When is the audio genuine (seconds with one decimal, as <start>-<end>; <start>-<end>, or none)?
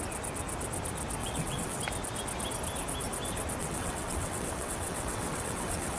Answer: 0.0-1.2; 1.8-3.6